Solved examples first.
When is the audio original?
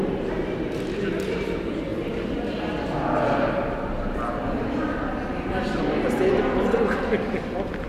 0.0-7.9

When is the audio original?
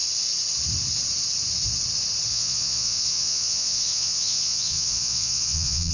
0.0-2.3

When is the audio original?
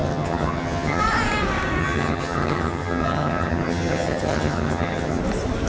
1.0-1.8; 5.2-5.7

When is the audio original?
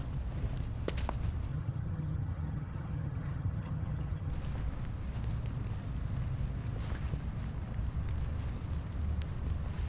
0.0-1.5; 4.3-9.9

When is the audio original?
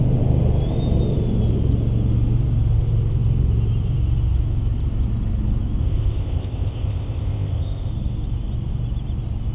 0.0-5.8; 7.9-9.5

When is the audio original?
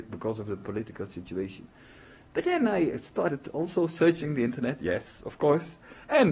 0.0-6.3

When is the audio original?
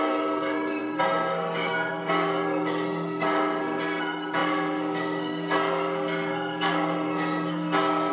none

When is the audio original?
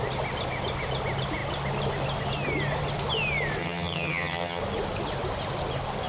0.0-3.6; 4.6-6.1